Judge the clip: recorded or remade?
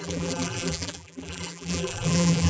remade